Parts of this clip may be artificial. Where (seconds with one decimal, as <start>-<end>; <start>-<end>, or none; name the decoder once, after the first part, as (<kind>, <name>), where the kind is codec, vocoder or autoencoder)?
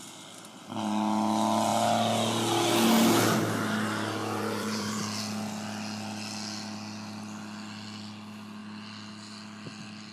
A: 4.2-5.0 (vocoder, BigVGAN v2)